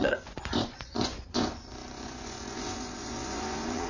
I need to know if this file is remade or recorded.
remade